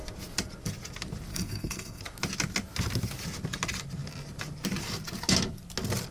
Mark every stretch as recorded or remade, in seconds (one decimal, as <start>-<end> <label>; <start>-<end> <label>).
0.0-1.3 recorded; 1.3-2.0 remade; 2.0-6.1 recorded